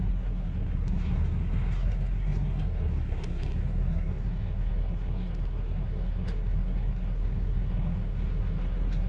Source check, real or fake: fake